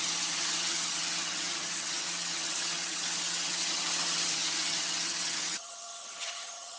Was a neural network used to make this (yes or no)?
yes